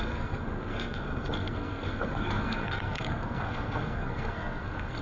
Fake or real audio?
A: fake